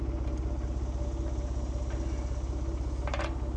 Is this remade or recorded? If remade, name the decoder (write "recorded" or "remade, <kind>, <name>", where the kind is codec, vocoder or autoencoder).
recorded